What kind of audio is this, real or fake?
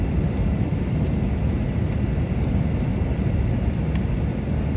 real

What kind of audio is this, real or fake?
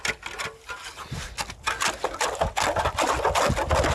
real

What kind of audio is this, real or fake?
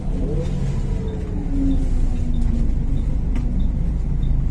real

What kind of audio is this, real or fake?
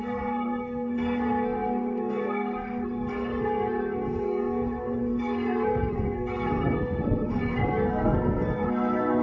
fake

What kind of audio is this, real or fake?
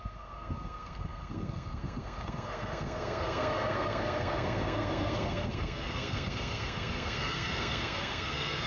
fake